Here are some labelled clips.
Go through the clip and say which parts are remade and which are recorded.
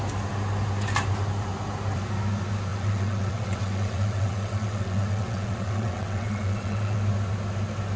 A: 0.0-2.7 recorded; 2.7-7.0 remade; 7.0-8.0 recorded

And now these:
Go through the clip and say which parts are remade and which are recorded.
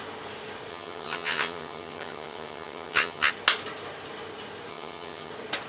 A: 0.0-0.7 recorded; 0.7-3.3 remade; 3.3-4.7 recorded; 4.7-5.3 remade; 5.3-5.7 recorded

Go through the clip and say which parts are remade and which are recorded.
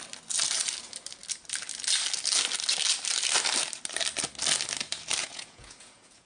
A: 0.0-5.2 recorded; 5.2-6.3 remade